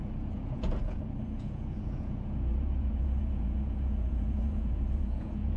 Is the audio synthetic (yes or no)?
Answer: yes